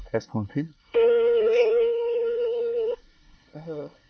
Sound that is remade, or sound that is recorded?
remade